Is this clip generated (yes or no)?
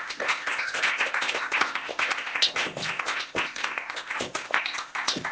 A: yes